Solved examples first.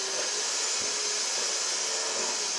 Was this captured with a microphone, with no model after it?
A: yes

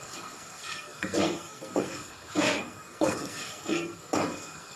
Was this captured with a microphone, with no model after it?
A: no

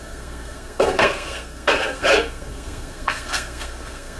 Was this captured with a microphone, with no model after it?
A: no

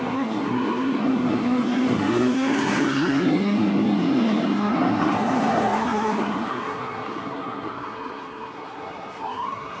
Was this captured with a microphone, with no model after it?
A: no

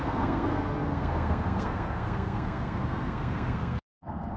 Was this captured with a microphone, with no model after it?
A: no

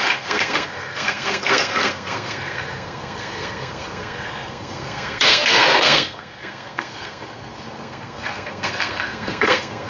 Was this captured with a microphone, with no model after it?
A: no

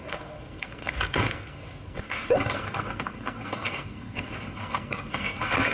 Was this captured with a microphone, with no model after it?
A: no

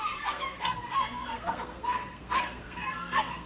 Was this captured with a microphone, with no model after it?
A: no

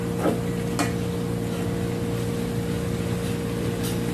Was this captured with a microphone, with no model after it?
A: yes